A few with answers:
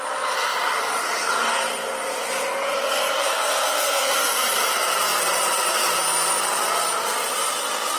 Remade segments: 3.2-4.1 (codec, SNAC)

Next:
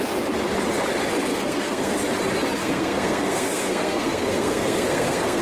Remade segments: 1.3-1.9 (codec, SNAC); 2.6-5.4

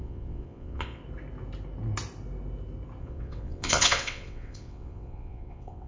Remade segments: 0.0-1.0 (vocoder, WaveNeXt); 3.0-5.9